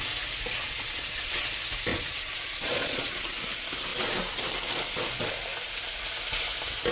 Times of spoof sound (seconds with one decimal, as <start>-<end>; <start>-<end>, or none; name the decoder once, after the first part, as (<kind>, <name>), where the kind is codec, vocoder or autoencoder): 0.6-1.4 (vocoder, Vocos); 1.9-3.2